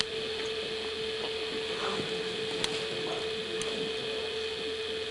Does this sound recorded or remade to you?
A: recorded